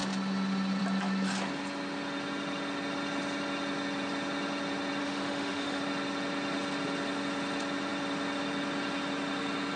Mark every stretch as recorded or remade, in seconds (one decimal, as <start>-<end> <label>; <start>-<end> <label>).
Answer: 0.0-5.0 recorded; 5.0-5.8 remade; 5.8-9.8 recorded